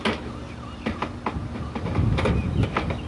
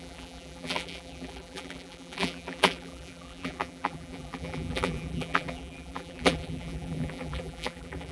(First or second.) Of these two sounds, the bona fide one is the first